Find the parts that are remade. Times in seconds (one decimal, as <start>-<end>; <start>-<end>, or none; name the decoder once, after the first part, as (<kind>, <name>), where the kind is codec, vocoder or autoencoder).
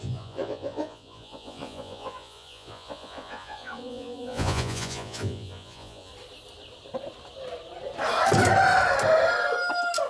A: 0.0-6.1 (vocoder, Vocos)